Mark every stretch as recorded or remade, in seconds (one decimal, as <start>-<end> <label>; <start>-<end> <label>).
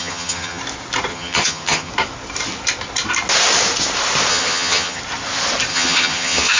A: 0.0-0.6 remade; 0.6-1.1 recorded; 1.1-1.9 remade; 1.9-4.3 recorded; 4.3-5.0 remade; 5.0-5.7 recorded; 5.7-6.6 remade